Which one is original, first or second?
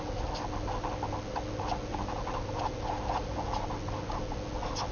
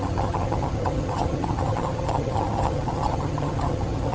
first